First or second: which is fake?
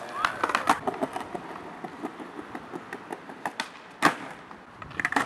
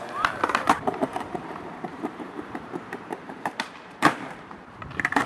second